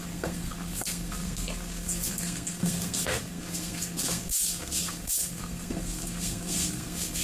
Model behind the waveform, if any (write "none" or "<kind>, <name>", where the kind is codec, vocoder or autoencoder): codec, SNAC